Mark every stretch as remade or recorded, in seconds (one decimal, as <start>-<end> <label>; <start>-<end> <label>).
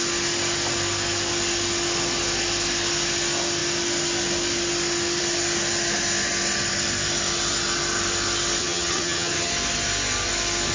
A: 0.0-8.6 recorded; 8.6-9.5 remade; 9.5-10.7 recorded